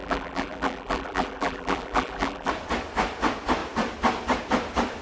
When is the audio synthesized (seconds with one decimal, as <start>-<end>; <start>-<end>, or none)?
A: 0.0-2.5